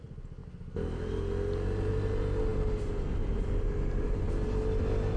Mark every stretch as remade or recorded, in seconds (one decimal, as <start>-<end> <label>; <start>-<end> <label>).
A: 0.0-5.2 recorded